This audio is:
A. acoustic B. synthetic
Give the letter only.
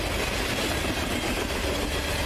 A